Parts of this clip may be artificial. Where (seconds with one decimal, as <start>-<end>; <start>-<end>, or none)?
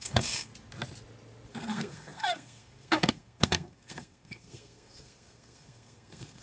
0.0-0.5; 1.5-6.4